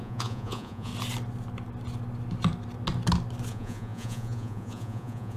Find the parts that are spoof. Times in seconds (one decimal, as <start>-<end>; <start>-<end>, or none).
0.0-0.9; 3.5-5.4